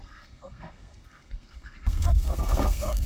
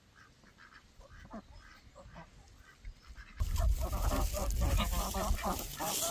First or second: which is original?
second